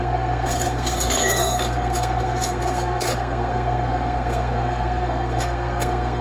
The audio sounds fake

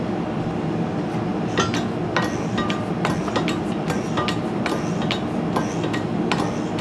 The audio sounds real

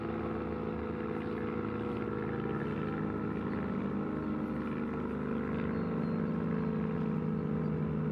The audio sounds real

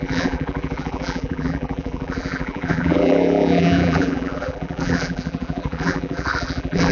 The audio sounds fake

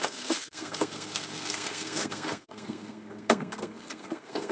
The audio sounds fake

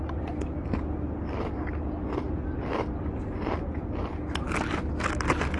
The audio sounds real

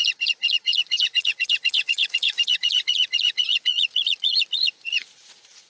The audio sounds fake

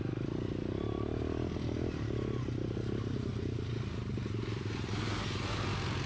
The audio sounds real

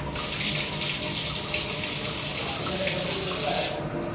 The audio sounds real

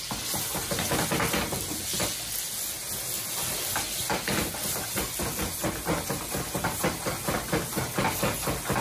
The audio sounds real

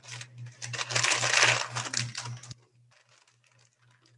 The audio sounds real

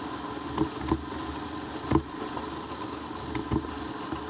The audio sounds real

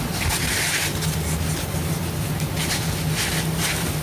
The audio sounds real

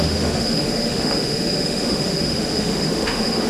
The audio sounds fake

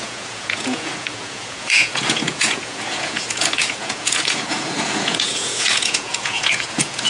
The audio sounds fake